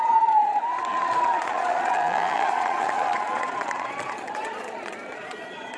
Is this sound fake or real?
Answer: fake